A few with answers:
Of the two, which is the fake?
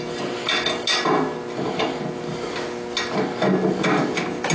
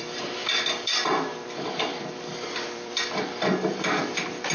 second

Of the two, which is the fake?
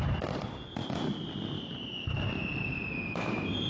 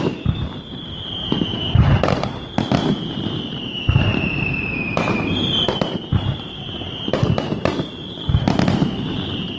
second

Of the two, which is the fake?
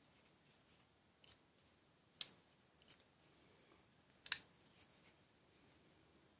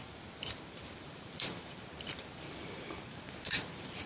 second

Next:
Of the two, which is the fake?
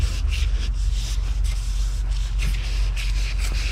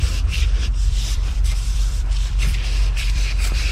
second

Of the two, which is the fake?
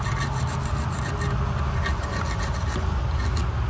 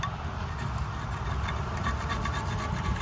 second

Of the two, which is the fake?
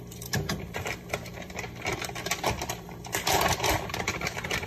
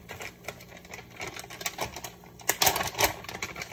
first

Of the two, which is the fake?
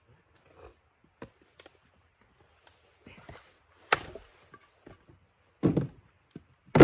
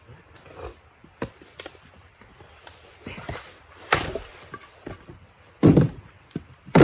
second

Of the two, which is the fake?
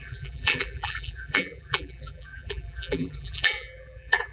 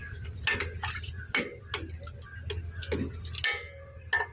first